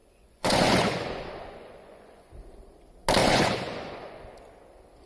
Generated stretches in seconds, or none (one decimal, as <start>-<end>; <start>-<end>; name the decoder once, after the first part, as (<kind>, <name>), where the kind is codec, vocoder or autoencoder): 0.0-2.3 (vocoder, Vocos); 3.2-4.2